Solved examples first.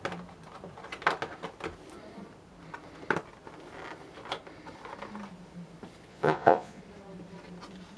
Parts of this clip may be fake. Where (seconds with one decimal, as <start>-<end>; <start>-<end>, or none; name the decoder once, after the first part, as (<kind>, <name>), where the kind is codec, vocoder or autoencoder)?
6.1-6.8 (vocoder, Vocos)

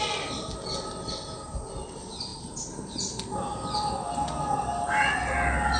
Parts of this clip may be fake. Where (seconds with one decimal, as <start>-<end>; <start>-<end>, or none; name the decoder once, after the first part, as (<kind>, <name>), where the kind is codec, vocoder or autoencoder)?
none

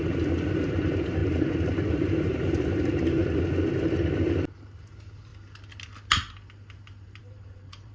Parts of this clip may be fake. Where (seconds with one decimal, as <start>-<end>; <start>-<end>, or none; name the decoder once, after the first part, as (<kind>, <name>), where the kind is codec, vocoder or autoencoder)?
0.0-1.2 (vocoder, BigVGAN v2); 1.9-3.2; 4.8-5.3; 7.2-7.9

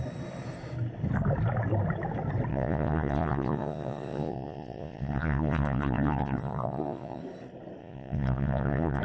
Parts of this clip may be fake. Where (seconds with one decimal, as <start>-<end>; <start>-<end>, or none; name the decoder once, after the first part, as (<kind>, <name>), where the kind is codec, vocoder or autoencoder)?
2.5-7.2 (vocoder, Vocos); 7.8-9.0

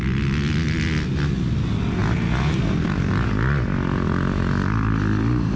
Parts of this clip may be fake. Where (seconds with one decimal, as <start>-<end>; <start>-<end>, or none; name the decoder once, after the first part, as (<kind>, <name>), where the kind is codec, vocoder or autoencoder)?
none